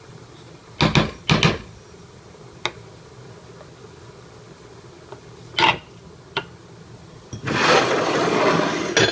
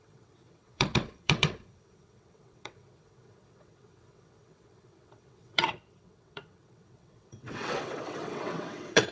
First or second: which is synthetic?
second